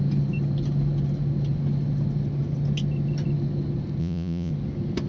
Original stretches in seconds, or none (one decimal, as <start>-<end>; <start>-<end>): 0.0-4.0; 4.5-5.1